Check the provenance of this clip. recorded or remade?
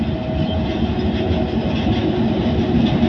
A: recorded